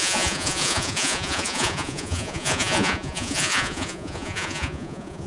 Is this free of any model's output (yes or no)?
no